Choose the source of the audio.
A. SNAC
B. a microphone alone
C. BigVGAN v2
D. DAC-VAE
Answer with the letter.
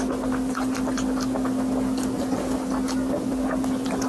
B